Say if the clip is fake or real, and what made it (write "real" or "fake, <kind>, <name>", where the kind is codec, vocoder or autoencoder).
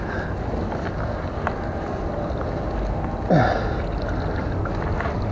real